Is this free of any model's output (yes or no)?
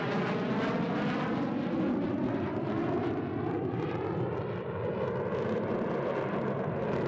yes